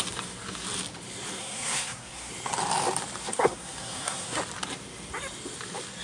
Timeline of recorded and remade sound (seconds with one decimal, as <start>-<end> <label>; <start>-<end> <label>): 0.0-1.4 recorded; 1.4-2.3 remade; 2.3-3.2 recorded; 3.2-4.4 remade; 4.4-6.0 recorded